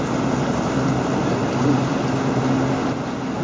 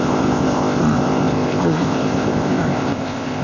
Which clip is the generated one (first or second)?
second